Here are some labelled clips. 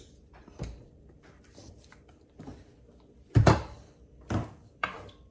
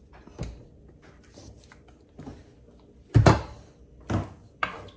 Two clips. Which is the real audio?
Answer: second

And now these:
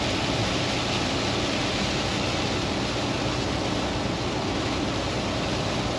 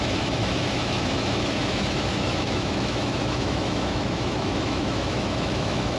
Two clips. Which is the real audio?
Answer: first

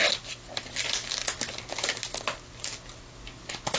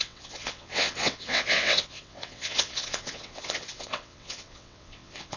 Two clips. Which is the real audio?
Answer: first